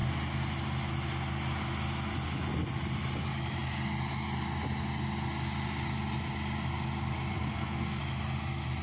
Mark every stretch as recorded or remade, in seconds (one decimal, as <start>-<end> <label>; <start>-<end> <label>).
0.0-7.3 recorded; 7.3-8.0 remade; 8.0-8.8 recorded